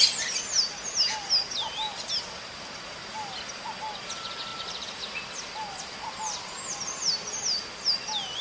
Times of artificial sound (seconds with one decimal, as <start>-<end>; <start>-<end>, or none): none